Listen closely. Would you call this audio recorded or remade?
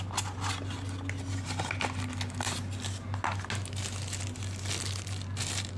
recorded